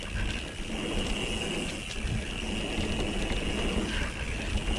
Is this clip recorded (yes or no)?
yes